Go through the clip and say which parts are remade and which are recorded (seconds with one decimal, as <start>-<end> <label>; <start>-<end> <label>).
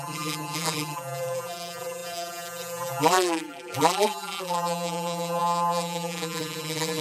0.0-7.0 remade